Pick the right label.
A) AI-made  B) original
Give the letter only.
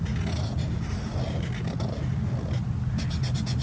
B